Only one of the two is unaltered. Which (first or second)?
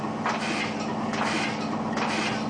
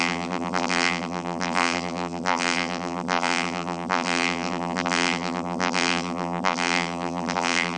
first